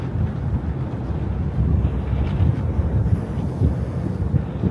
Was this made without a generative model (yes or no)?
yes